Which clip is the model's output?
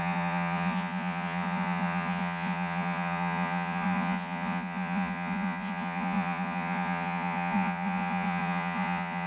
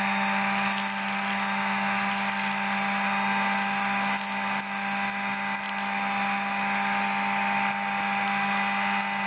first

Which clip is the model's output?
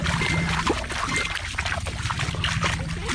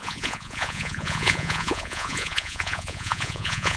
second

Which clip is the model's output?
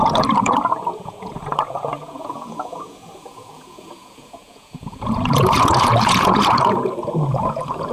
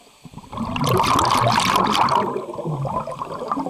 first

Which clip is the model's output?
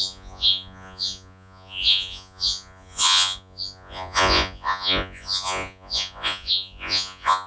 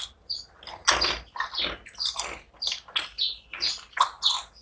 first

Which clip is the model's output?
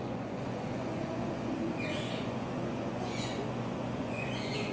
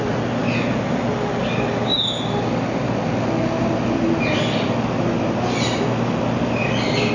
first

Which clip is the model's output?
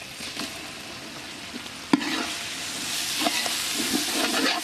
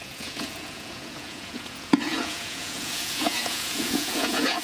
second